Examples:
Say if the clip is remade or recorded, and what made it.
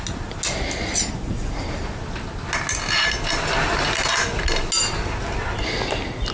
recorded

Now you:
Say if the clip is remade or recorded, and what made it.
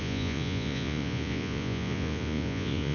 remade, vocoder, Vocos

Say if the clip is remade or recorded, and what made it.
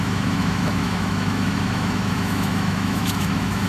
remade, autoencoder, DAC-VAE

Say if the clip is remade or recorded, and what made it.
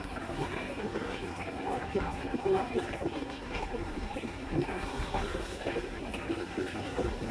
remade, codec, SNAC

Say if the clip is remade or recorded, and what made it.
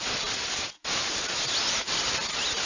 recorded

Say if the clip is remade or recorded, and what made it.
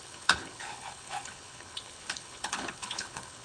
remade, codec, HILCodec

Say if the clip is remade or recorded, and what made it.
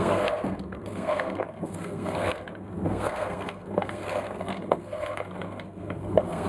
remade, codec, SNAC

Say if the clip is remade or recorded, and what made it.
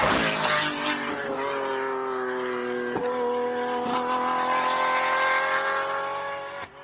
recorded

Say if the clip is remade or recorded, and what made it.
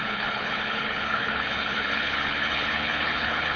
remade, codec, HILCodec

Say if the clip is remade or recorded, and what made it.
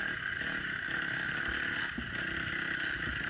recorded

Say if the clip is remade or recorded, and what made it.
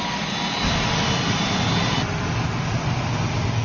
recorded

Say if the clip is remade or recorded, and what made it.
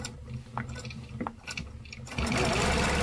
recorded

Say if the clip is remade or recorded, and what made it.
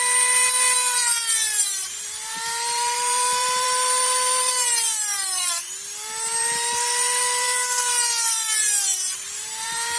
remade, vocoder, BigVGAN v2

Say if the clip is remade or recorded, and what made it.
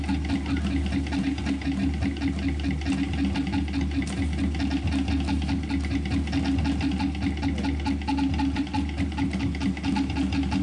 recorded